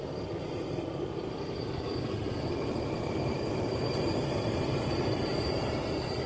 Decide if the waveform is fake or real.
fake